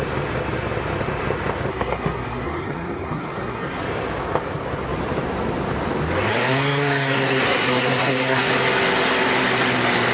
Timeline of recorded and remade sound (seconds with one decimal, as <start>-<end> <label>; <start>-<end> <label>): 0.0-1.7 recorded; 1.7-3.8 remade; 3.8-6.3 recorded; 6.3-8.5 remade; 8.5-10.1 recorded